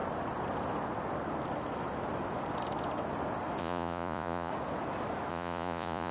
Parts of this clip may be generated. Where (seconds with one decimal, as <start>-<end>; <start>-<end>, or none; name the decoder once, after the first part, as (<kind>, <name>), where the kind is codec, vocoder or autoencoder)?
3.6-4.5 (vocoder, Vocos); 5.3-6.1